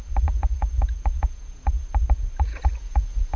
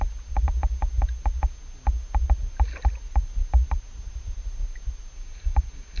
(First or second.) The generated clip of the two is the first